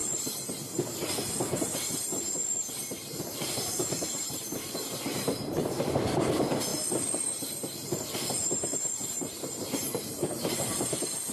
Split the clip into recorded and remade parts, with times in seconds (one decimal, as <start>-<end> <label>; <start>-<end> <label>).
0.0-1.6 recorded; 1.6-2.4 remade; 2.4-3.2 recorded; 3.2-6.7 remade; 6.7-7.3 recorded; 7.3-11.3 remade